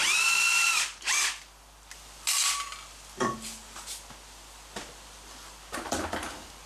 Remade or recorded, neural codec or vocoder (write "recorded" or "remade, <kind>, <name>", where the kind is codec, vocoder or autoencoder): recorded